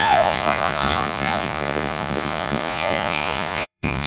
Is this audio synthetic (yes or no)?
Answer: yes